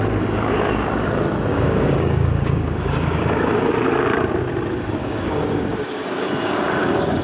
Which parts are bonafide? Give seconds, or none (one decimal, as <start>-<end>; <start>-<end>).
0.0-1.5; 3.7-5.0